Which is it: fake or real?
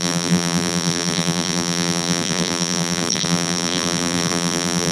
fake